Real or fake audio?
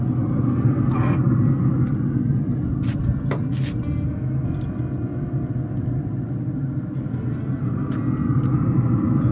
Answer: real